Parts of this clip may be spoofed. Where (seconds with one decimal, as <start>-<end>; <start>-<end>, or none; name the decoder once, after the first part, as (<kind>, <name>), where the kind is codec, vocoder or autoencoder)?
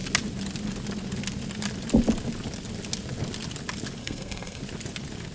4.0-4.6 (codec, SNAC)